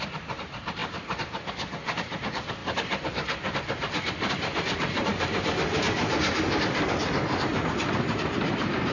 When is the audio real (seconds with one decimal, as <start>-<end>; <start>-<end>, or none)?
2.6-4.3; 5.1-8.4